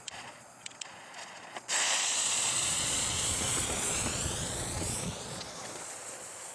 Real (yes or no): no